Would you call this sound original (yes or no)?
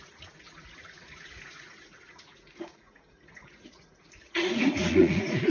no